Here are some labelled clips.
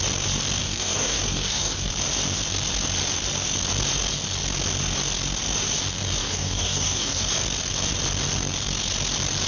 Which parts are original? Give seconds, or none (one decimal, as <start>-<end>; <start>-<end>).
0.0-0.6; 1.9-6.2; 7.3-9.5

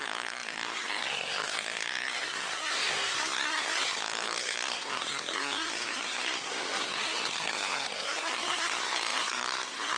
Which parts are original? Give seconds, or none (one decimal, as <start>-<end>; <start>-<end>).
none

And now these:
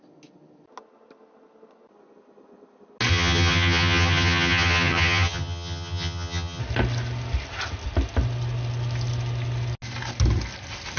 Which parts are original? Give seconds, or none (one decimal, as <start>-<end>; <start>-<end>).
0.0-3.1; 6.6-11.0

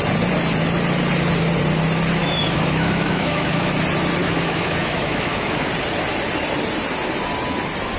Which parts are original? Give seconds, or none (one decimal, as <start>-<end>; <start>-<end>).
0.0-2.2; 3.7-4.2; 5.7-8.0